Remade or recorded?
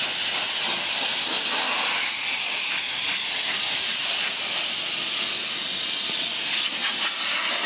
recorded